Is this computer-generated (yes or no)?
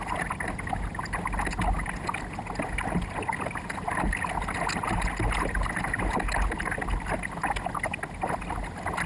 no